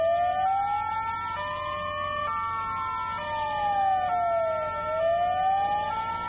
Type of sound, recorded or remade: recorded